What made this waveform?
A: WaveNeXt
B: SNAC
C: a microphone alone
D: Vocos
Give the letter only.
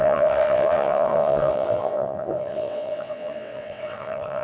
A